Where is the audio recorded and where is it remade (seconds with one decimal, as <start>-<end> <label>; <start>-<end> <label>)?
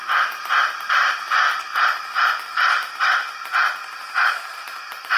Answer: 0.0-5.2 recorded